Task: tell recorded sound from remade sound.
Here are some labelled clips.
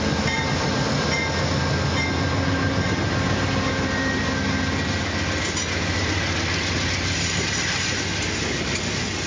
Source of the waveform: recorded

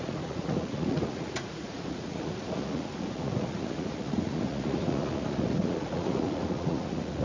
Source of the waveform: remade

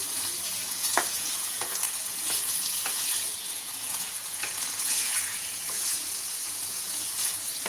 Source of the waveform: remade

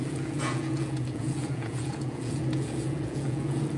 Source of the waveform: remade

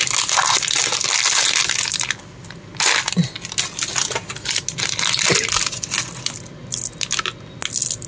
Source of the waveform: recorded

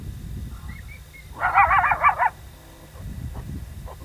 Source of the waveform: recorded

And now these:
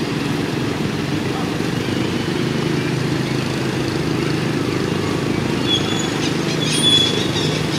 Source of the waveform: recorded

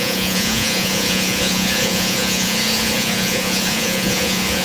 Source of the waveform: remade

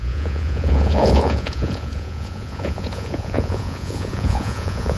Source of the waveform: remade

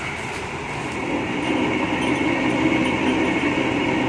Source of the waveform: recorded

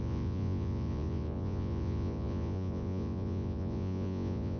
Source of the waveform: remade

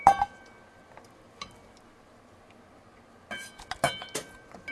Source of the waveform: recorded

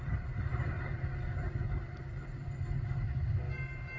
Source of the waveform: recorded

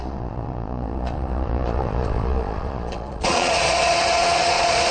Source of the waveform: remade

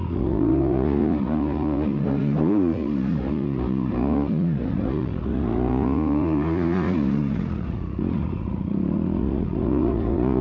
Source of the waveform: remade